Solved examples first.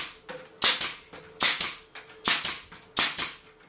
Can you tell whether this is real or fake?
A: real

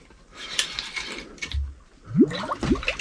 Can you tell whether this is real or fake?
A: real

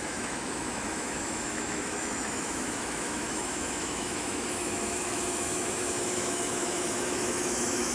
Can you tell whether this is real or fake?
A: fake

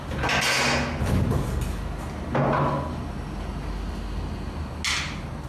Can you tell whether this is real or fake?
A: real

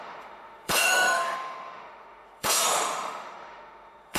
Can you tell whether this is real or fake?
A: fake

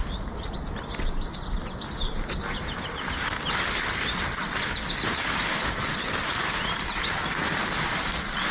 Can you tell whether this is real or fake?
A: real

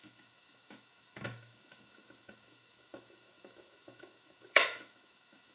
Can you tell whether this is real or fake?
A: fake